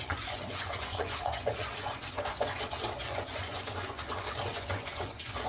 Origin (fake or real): fake